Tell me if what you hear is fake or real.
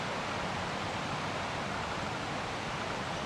real